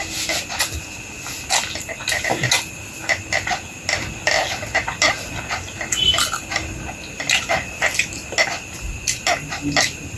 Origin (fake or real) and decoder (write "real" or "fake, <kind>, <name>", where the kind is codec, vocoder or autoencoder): real